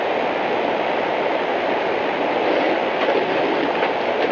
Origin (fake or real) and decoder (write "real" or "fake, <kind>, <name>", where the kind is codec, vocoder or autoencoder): real